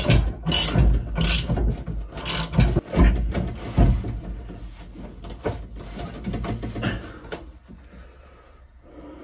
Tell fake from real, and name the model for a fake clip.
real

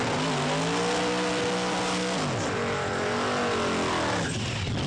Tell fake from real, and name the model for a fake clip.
real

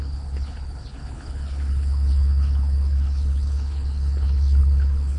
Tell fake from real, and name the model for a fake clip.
fake, codec, HILCodec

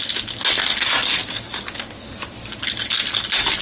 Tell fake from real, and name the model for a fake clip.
real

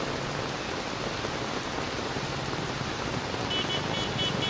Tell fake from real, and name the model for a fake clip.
real